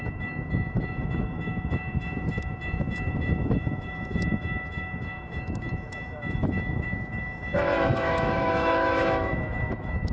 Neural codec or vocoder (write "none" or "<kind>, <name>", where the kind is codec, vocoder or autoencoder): autoencoder, DAC-VAE